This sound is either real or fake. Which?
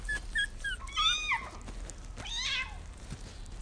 real